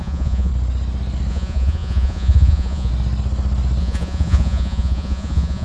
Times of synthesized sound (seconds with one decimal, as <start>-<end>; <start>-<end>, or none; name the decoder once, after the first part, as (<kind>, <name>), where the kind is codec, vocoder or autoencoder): 0.0-0.5 (vocoder, Vocos); 1.3-2.9; 3.8-5.6